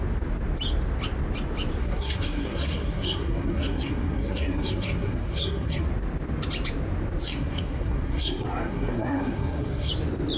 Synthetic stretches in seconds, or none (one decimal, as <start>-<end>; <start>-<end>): 1.8-5.9; 7.2-9.9